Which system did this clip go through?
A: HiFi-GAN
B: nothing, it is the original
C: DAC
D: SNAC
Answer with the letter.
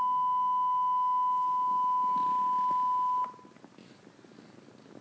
B